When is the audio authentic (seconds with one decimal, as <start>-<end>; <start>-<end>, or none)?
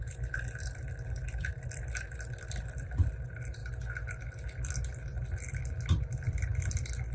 0.0-7.1